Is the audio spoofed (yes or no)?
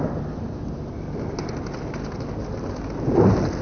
no